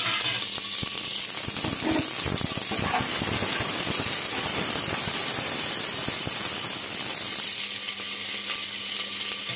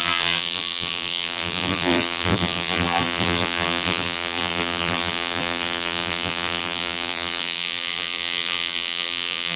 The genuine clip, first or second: first